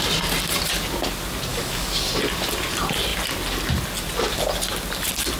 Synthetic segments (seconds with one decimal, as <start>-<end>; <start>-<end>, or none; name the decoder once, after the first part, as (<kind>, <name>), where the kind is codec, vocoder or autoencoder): 1.5-2.1 (codec, DAC)